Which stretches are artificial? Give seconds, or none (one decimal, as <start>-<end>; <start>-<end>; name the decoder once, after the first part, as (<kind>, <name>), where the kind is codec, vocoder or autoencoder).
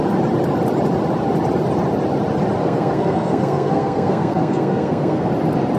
2.6-5.3 (codec, SNAC)